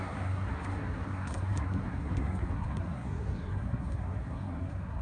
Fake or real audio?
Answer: fake